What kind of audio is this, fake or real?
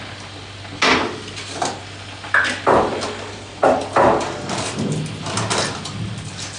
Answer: real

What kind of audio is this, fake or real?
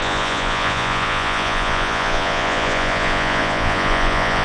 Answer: fake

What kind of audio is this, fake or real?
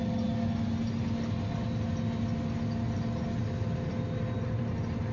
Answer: real